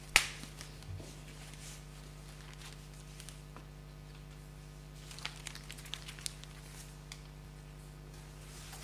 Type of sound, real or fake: real